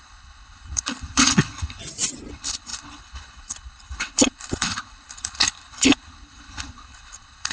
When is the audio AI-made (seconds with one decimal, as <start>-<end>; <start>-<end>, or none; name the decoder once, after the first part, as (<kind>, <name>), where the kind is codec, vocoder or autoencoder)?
0.0-1.8 (codec, HILCodec); 2.3-7.5